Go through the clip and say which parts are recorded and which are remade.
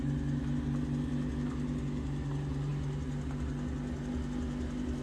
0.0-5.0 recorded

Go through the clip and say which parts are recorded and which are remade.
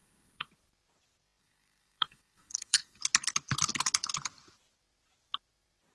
0.0-0.5 remade; 0.5-1.4 recorded; 1.4-3.0 remade; 3.0-5.9 recorded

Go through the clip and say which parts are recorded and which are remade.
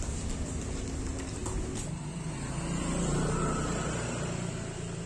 0.0-5.1 recorded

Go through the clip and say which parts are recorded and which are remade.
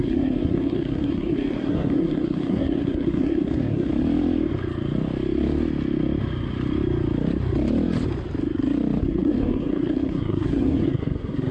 0.0-3.9 remade; 3.9-9.0 recorded; 9.0-11.5 remade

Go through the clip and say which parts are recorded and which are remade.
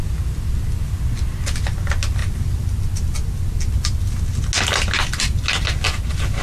0.0-6.4 recorded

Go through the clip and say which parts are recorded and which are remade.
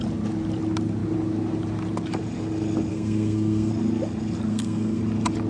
0.0-2.9 recorded; 2.9-3.7 remade; 3.7-4.5 recorded; 4.5-5.0 remade; 5.0-5.5 recorded